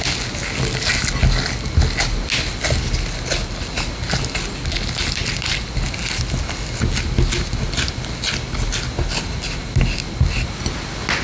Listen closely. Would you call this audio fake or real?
real